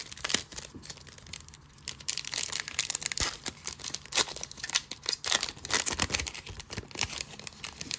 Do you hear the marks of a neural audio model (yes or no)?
no